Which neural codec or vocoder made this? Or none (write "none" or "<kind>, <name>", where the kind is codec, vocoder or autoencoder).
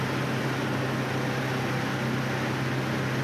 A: none